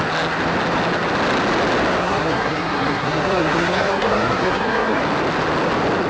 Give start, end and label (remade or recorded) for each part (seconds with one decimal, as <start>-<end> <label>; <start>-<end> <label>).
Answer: 0.0-2.0 recorded; 2.0-5.0 remade; 5.0-6.1 recorded